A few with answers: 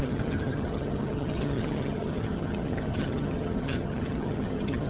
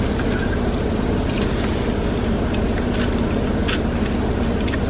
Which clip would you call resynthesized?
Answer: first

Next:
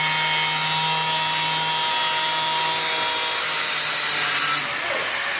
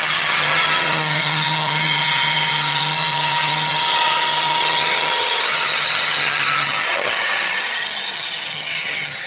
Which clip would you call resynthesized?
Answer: second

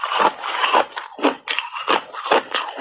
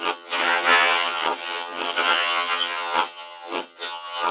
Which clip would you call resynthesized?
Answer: second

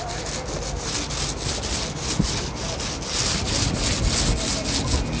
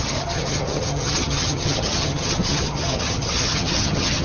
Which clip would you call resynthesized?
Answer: second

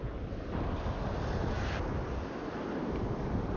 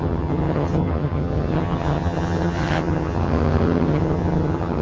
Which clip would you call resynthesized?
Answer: second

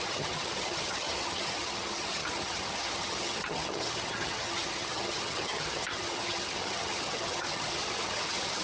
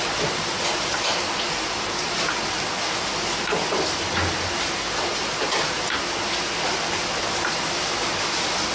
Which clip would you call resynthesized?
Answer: first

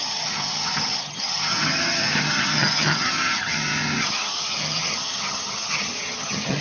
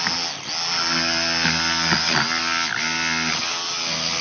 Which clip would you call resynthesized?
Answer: first